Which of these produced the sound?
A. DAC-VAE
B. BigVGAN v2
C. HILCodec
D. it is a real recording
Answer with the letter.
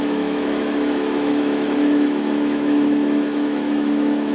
A